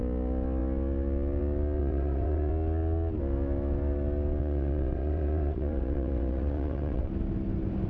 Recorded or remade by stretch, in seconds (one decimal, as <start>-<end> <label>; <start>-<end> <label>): 0.0-1.8 recorded; 1.8-2.5 remade; 2.5-4.4 recorded; 4.4-7.1 remade; 7.1-7.9 recorded